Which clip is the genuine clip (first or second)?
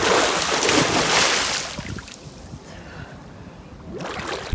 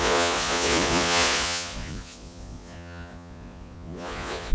first